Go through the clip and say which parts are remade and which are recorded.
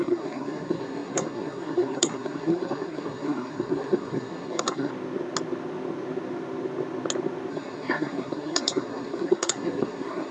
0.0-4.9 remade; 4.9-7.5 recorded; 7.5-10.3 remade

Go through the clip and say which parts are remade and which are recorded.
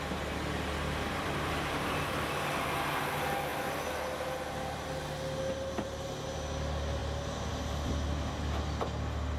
0.0-9.4 recorded